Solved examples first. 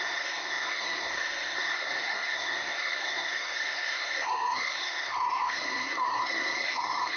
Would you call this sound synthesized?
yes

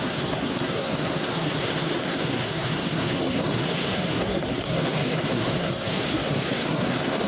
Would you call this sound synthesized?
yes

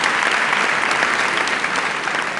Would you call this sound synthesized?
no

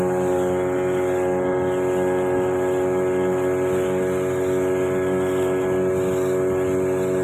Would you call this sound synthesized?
no